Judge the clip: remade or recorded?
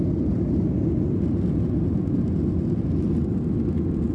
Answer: recorded